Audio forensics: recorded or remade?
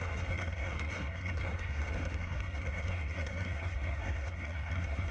remade